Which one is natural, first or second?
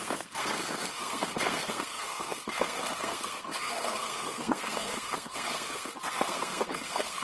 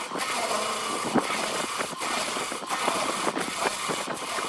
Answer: second